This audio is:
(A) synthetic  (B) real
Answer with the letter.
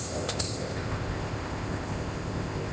A